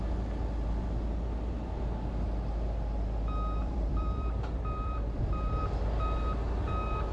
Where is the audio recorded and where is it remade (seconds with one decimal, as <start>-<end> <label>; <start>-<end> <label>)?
0.0-3.6 recorded; 3.6-5.7 remade; 5.7-7.1 recorded